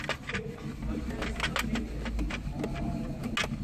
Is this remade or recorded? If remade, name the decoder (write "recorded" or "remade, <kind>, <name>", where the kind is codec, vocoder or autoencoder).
recorded